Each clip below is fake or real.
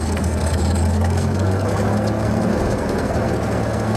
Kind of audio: fake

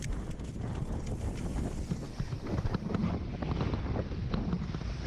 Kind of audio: real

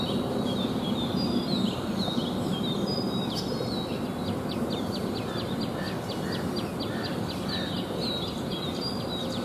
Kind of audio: real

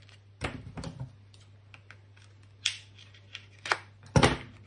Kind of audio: real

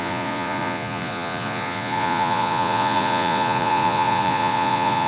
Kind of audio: fake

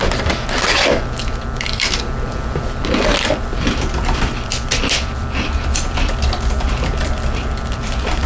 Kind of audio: fake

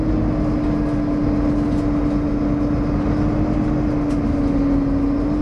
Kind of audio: real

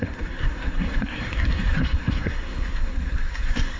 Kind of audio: fake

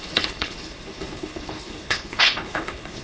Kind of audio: fake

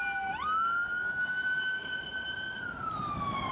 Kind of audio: real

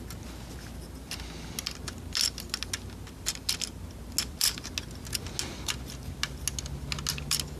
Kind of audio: real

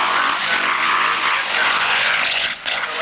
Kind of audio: fake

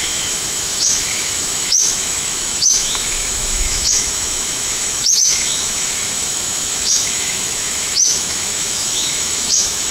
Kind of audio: fake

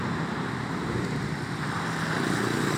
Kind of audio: real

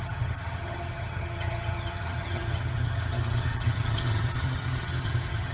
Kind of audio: fake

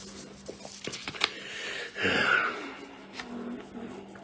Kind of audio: real